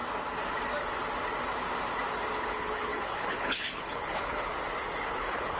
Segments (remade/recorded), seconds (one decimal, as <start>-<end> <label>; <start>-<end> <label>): 0.0-2.4 recorded; 2.4-4.5 remade; 4.5-5.0 recorded; 5.0-5.6 remade